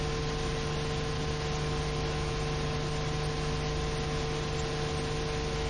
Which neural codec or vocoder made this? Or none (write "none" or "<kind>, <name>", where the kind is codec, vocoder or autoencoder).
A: none